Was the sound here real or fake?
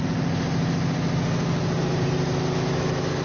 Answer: real